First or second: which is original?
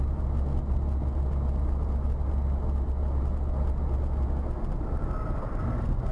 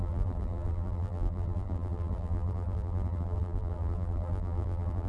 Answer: first